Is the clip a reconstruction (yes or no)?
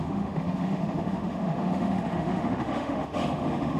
yes